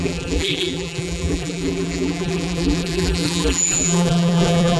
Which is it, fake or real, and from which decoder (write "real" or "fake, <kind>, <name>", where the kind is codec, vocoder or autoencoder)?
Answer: fake, vocoder, BigVGAN v2